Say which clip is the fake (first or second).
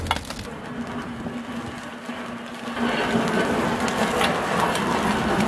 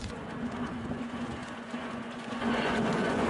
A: second